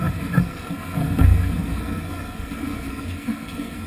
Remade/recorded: remade